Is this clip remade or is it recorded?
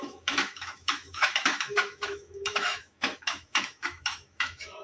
remade